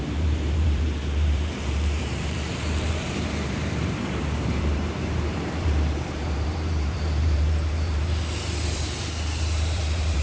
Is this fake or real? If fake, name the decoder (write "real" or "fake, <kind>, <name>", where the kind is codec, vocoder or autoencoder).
fake, vocoder, BigVGAN v2